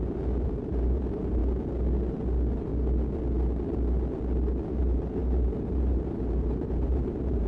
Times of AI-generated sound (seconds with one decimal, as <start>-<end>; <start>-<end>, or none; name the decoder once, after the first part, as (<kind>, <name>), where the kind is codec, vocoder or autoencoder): 0.0-1.4 (vocoder, BigVGAN v2); 4.8-7.5